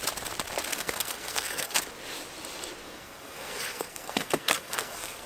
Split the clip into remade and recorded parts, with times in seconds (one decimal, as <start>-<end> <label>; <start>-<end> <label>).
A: 0.0-0.7 recorded; 0.7-1.8 remade; 1.8-2.8 recorded; 2.8-5.3 remade